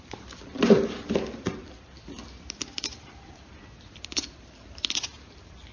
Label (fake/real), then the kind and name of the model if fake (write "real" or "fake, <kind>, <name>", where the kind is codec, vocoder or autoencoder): real